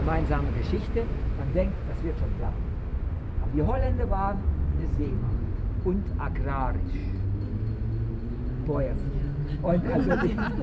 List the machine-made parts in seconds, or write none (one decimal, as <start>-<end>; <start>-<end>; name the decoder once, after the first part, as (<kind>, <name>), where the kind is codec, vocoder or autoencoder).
1.7-2.5 (vocoder, Vocos); 2.9-5.6

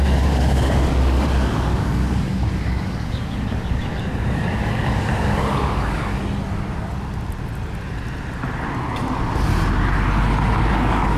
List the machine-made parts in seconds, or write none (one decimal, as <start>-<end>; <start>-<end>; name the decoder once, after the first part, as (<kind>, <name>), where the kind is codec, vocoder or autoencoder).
0.0-6.2 (codec, DAC); 10.7-11.2

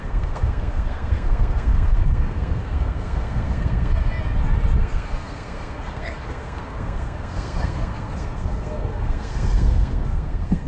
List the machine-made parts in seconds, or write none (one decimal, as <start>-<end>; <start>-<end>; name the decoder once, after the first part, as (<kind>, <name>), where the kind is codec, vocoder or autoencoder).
0.0-4.1 (codec, SNAC); 4.8-10.7

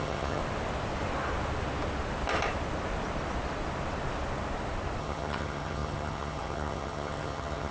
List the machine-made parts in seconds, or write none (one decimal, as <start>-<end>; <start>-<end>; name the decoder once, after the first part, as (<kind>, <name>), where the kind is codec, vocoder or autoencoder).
0.0-0.4 (vocoder, HiFi-GAN); 5.0-7.7